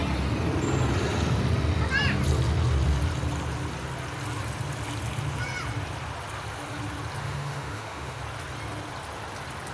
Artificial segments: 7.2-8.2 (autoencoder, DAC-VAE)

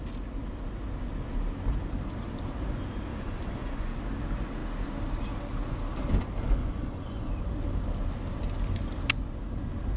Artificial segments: 3.1-3.9 (vocoder, Vocos); 6.6-7.3

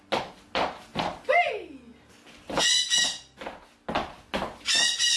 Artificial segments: 0.9-1.5 (vocoder, BigVGAN v2)